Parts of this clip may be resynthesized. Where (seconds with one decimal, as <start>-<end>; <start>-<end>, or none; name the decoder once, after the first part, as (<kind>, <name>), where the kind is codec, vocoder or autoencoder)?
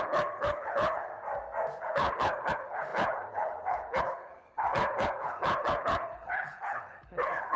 0.0-1.1 (codec, HILCodec); 1.8-7.6